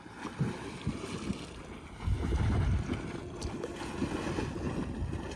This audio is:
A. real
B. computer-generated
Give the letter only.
A